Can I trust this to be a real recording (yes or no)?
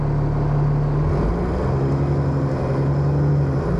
yes